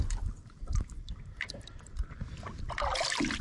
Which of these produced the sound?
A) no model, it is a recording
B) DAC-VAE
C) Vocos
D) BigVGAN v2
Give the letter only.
A